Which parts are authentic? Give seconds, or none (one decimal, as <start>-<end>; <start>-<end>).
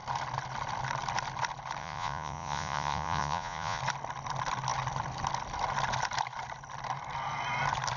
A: 0.0-1.8; 3.8-8.0